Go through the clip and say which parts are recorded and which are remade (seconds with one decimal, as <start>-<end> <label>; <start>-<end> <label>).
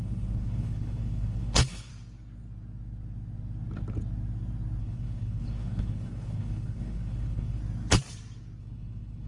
0.0-1.9 remade; 1.9-4.8 recorded; 4.8-7.6 remade; 7.6-8.6 recorded; 8.6-9.3 remade